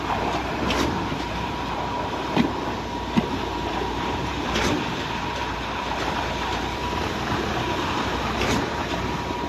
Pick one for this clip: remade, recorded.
remade